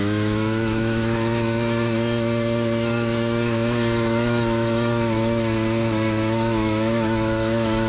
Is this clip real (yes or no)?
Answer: no